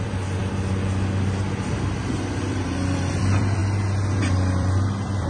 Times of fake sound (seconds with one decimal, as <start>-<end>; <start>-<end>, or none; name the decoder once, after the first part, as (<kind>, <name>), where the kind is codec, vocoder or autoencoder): 0.0-3.6 (vocoder, BigVGAN v2); 4.2-5.3